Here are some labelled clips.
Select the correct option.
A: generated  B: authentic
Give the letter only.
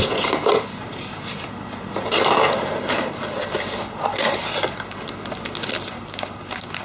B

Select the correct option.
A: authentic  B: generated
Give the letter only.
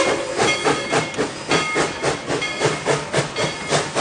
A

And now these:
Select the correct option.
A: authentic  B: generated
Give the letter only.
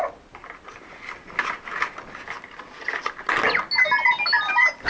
A